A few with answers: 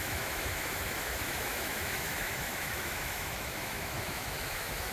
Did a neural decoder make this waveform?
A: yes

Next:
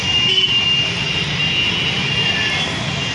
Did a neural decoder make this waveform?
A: no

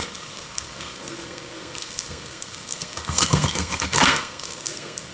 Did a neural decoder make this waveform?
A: yes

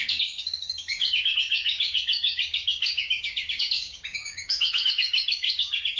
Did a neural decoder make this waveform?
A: yes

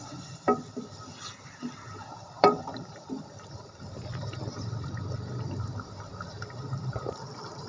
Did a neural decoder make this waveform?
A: yes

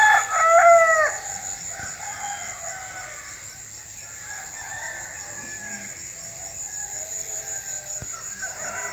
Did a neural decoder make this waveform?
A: no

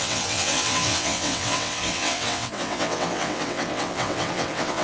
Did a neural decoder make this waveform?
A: yes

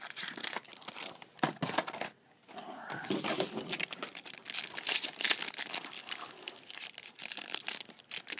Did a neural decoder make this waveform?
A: no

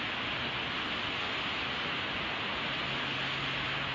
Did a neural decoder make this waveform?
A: no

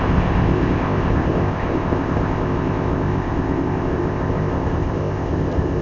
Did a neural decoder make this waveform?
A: yes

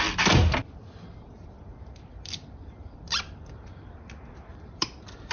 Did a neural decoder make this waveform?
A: yes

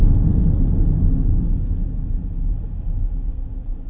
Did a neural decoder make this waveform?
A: no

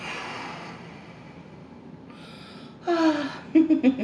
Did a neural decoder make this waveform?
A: no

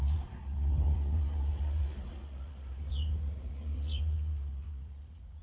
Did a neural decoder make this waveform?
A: yes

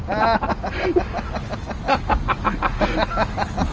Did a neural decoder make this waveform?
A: no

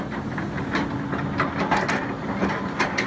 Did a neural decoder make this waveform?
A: no